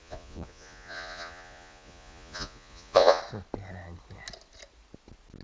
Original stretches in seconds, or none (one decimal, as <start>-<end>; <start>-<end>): 3.2-5.4